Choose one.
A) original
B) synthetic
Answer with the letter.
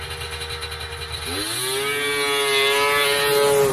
A